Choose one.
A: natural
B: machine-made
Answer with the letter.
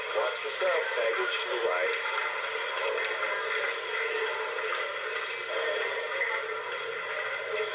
A